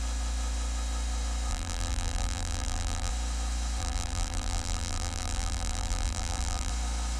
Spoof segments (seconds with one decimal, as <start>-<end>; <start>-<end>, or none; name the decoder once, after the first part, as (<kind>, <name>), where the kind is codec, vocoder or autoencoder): 1.5-3.1 (vocoder, BigVGAN v2); 3.8-6.7